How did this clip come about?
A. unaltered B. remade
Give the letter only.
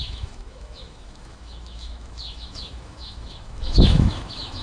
B